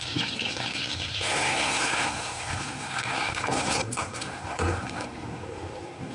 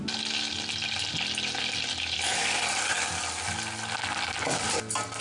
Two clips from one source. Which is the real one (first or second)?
second